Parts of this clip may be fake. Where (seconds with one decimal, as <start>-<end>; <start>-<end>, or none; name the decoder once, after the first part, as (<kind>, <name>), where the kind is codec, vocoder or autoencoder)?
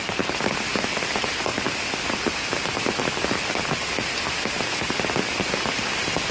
none